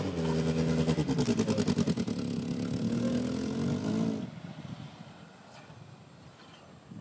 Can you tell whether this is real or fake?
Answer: real